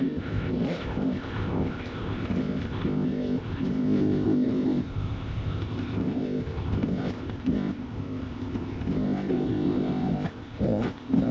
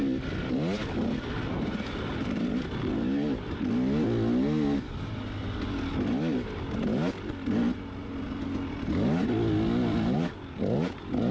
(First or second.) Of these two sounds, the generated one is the first